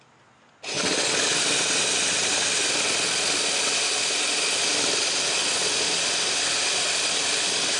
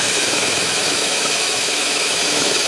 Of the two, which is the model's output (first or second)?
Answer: second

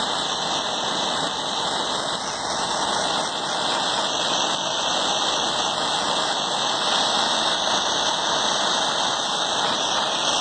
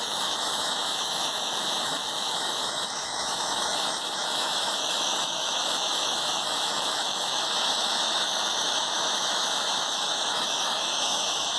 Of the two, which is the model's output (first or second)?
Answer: second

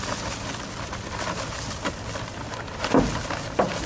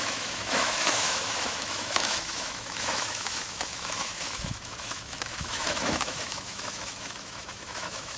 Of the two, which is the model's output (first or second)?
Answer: second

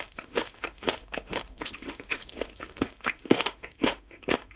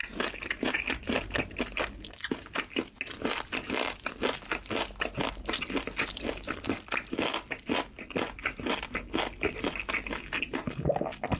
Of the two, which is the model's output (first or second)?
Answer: first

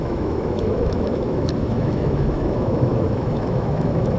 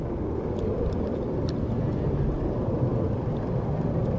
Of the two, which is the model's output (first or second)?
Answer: first